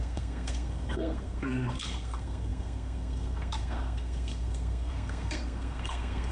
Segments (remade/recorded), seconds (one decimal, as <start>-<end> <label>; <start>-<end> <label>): 0.0-6.3 remade